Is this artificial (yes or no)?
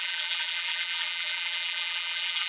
yes